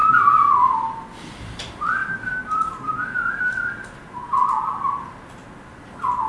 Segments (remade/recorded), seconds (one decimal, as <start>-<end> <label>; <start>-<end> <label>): 0.0-4.2 recorded; 4.2-5.0 remade; 5.0-6.3 recorded